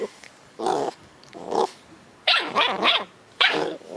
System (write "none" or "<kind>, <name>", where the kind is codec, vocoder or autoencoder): codec, DAC